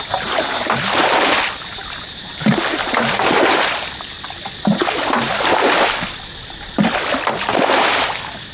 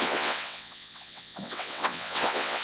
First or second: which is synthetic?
second